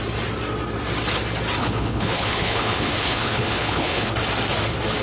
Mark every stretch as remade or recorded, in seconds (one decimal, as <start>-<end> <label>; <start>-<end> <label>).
0.0-1.6 recorded; 1.6-4.1 remade; 4.1-5.0 recorded